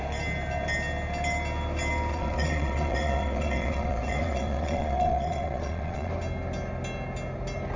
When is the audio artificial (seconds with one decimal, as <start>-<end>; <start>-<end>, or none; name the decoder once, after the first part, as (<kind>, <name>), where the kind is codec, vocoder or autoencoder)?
2.1-6.1 (vocoder, Vocos)